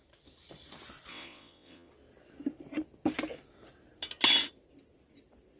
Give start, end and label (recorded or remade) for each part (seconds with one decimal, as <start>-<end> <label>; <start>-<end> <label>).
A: 0.0-1.1 recorded; 1.1-1.9 remade; 1.9-5.6 recorded